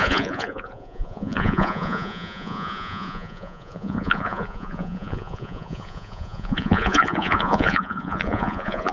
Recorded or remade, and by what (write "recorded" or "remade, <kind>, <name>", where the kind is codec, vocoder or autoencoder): remade, vocoder, Vocos